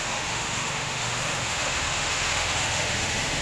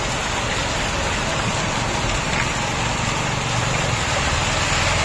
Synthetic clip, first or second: first